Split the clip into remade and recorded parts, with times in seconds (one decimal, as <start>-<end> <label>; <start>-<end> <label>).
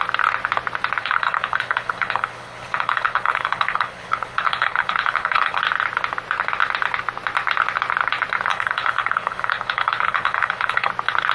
0.0-1.0 recorded; 1.0-5.6 remade; 5.6-8.5 recorded; 8.5-10.9 remade; 10.9-11.3 recorded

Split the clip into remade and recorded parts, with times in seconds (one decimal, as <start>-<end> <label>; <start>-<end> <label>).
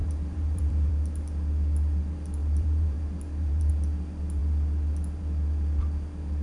0.0-0.9 remade; 0.9-2.4 recorded; 2.4-3.7 remade; 3.7-6.4 recorded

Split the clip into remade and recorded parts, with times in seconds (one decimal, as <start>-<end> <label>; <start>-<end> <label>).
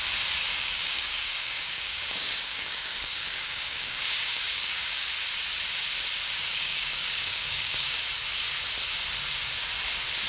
0.0-0.5 recorded; 0.5-5.1 remade; 5.1-6.2 recorded; 6.2-8.0 remade; 8.0-10.3 recorded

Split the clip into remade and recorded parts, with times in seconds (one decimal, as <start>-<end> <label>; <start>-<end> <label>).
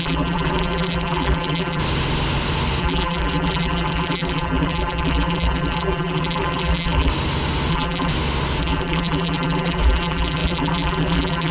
0.0-1.8 remade; 1.8-2.8 recorded; 2.8-7.1 remade; 7.1-7.7 recorded; 7.7-8.1 remade; 8.1-8.6 recorded; 8.6-11.5 remade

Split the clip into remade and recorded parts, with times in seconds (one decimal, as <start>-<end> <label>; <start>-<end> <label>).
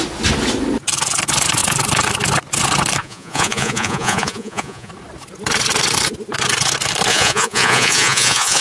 0.0-3.0 recorded; 3.0-4.9 remade; 4.9-7.1 recorded; 7.1-8.6 remade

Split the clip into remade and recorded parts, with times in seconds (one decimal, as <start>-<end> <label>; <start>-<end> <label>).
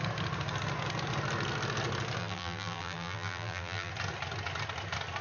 0.0-2.2 recorded; 2.2-3.9 remade; 3.9-5.2 recorded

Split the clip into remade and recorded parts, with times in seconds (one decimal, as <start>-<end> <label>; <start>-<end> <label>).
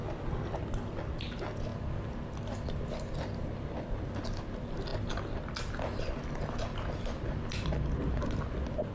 0.0-8.9 recorded